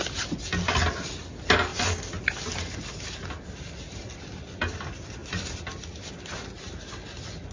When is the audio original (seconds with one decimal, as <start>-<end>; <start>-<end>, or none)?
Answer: 0.0-5.2; 5.9-7.5